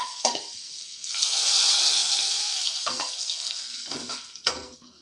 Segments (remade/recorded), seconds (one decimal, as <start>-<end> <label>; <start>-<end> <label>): 0.0-5.0 remade